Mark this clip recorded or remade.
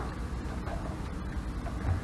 recorded